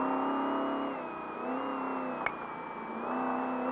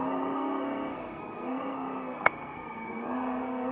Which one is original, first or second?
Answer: first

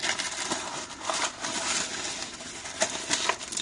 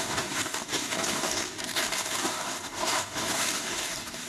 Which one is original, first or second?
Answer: first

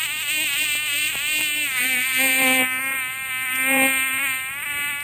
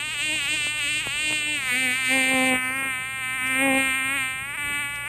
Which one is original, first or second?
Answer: second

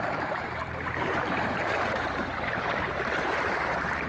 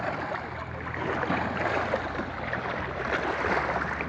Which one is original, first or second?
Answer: second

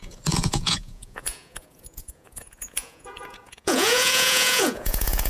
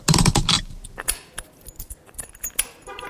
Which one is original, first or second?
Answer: second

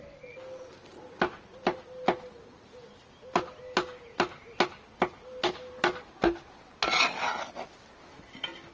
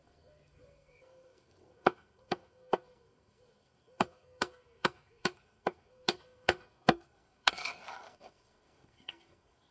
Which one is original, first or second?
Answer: first